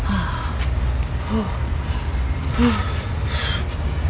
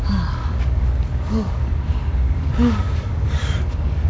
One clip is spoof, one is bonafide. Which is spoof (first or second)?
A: second